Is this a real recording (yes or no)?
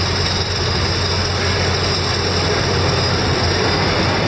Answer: yes